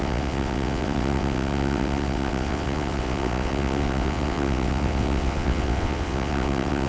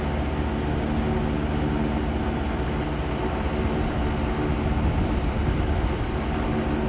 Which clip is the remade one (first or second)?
first